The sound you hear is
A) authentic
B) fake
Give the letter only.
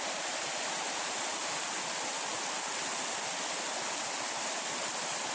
A